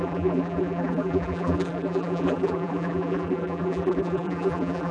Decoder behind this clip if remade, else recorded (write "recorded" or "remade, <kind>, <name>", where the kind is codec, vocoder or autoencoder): remade, vocoder, BigVGAN v2